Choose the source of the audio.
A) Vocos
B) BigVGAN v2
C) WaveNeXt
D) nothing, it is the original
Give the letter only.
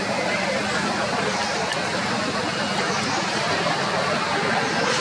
D